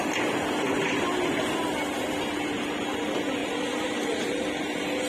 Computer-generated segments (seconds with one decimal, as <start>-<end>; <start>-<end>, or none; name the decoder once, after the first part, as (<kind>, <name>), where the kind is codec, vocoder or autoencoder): 3.4-5.1 (vocoder, BigVGAN v2)